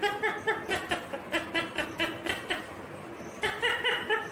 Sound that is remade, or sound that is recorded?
recorded